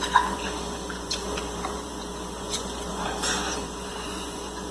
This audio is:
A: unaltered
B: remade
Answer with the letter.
B